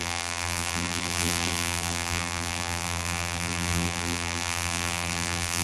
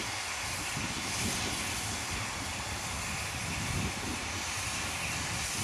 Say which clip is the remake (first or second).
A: first